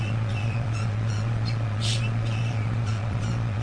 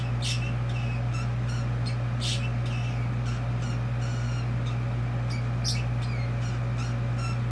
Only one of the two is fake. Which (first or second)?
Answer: first